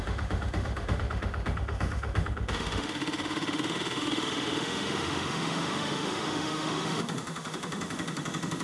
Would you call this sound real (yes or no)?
no